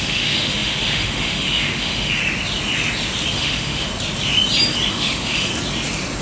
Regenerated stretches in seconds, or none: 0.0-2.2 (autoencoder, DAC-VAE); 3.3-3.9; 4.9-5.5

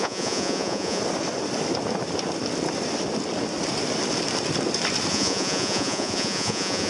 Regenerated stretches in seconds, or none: 0.0-1.0 (vocoder, Vocos); 5.1-6.9

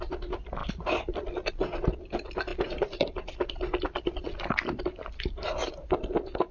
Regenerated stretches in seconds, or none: none

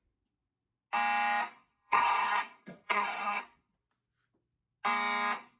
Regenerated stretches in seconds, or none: 1.7-3.4 (codec, SNAC)